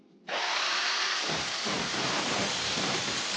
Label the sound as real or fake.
fake